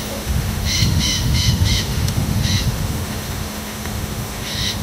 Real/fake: fake